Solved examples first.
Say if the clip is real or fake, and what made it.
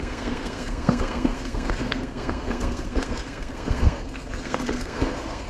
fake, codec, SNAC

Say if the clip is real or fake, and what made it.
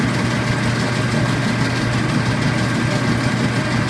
real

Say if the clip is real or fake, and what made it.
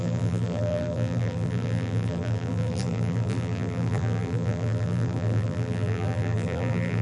fake, vocoder, BigVGAN v2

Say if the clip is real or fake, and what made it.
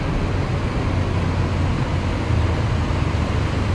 real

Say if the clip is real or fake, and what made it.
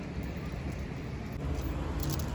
real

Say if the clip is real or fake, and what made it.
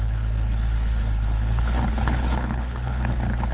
fake, codec, HILCodec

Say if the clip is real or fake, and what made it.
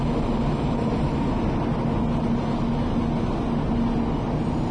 real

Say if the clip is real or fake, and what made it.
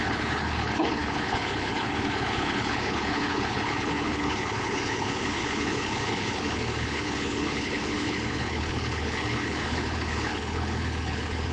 fake, codec, HILCodec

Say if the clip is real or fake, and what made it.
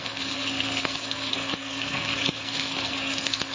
fake, codec, SNAC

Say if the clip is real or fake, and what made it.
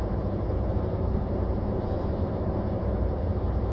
fake, vocoder, BigVGAN v2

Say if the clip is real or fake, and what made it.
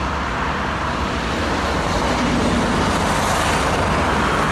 real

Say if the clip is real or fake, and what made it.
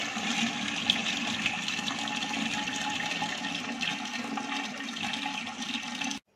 real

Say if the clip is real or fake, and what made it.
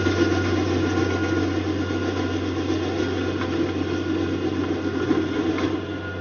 real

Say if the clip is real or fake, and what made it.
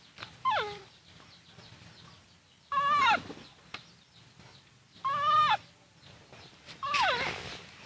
real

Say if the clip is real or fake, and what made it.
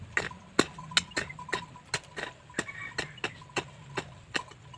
real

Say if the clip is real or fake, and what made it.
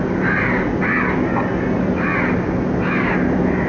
real